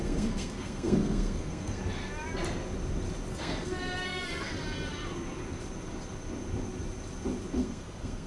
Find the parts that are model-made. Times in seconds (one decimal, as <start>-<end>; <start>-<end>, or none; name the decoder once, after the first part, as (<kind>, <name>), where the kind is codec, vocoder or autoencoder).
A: 0.0-1.8 (codec, SNAC); 3.3-4.5; 7.6-8.3